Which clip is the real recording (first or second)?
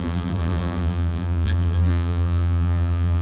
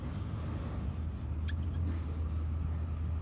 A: second